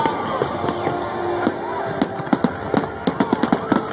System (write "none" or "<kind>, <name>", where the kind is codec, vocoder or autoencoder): none